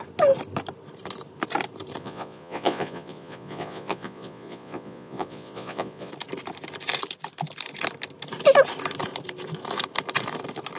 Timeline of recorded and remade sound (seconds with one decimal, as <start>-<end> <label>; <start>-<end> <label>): 0.0-2.0 recorded; 2.0-6.1 remade; 6.1-10.8 recorded